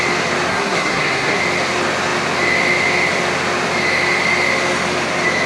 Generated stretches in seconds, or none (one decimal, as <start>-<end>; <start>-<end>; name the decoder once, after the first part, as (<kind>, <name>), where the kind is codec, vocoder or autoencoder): 0.5-1.4 (codec, SNAC)